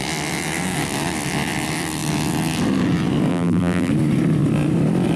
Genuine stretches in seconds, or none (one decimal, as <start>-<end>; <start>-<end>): 0.0-3.3; 3.9-5.2